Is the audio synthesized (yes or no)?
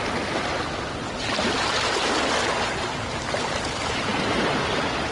no